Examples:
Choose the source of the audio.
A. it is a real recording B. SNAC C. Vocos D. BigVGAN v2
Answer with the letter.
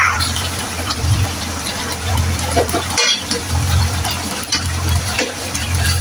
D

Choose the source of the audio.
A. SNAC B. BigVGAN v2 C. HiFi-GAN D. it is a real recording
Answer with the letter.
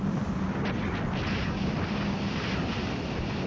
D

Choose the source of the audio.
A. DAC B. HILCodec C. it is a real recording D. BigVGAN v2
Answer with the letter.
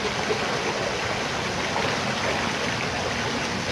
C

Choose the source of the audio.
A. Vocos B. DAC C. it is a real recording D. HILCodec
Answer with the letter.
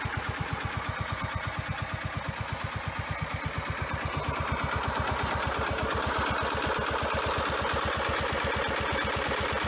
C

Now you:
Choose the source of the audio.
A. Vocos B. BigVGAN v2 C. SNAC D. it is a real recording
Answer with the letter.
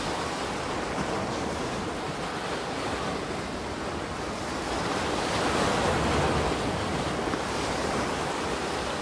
D